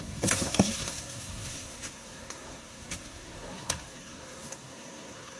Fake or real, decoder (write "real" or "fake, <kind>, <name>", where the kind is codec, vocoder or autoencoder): fake, codec, SNAC